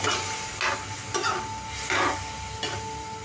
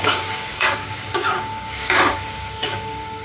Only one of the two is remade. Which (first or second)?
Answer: second